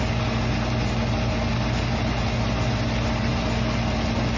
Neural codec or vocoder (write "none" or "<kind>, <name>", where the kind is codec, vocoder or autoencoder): none